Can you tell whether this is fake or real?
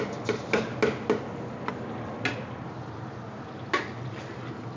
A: real